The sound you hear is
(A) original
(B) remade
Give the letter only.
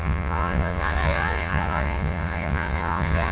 B